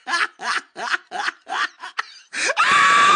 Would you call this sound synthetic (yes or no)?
yes